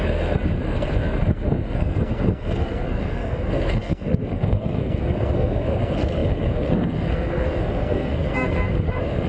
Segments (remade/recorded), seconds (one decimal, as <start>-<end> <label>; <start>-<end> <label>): 0.0-9.3 remade